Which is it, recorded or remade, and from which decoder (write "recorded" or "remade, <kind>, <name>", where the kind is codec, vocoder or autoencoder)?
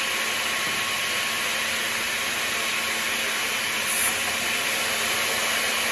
recorded